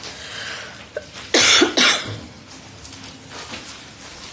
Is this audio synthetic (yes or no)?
no